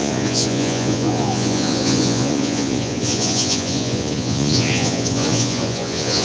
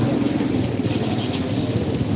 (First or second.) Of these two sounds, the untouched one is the second